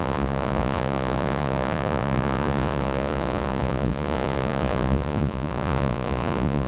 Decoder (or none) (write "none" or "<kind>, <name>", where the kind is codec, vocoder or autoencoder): vocoder, Vocos